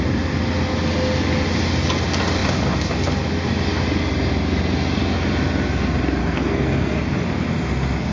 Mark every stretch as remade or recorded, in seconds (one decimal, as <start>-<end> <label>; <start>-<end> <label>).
0.0-6.2 recorded; 6.2-7.0 remade; 7.0-8.1 recorded